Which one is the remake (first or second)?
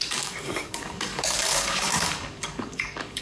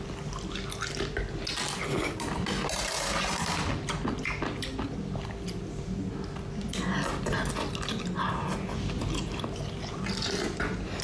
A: first